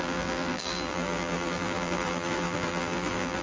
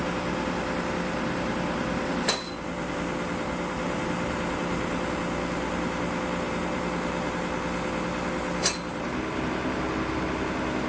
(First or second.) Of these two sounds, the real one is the second